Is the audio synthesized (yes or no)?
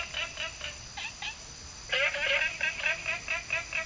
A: no